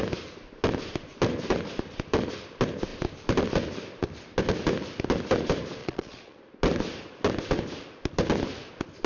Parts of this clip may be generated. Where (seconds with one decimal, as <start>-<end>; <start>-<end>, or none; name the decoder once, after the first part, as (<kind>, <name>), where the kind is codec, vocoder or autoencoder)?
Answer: 5.8-6.4 (vocoder, Vocos)